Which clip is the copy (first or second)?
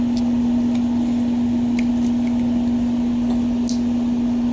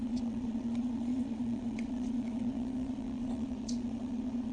second